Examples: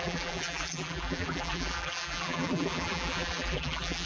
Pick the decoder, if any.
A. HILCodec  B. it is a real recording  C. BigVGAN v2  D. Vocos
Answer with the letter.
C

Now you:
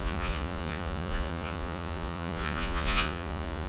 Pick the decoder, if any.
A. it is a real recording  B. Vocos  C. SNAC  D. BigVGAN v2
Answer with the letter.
B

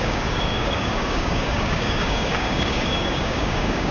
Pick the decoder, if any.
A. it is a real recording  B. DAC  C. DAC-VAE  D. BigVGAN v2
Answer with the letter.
B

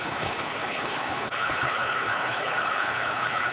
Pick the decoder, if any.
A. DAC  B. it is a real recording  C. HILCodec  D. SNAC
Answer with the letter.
C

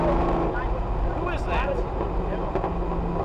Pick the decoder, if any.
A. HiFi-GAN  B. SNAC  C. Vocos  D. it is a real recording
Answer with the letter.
D